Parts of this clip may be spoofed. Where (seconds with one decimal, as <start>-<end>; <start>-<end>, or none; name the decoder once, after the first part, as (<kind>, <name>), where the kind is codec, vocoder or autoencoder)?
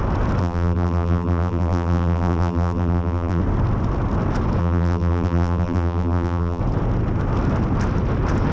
0.4-3.4 (vocoder, BigVGAN v2); 4.6-6.6